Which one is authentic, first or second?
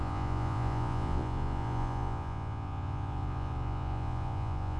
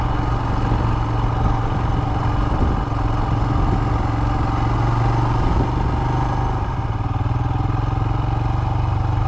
second